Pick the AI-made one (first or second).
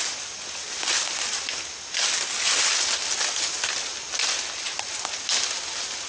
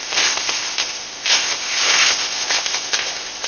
second